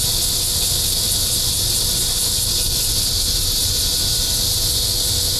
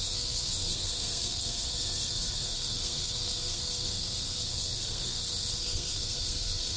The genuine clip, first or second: first